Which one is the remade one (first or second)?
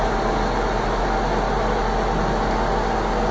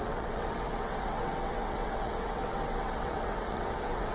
second